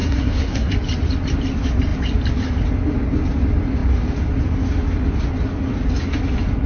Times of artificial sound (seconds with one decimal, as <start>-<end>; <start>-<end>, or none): 0.0-0.7